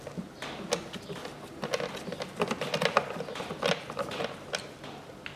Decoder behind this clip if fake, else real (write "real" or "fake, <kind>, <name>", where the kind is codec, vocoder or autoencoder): real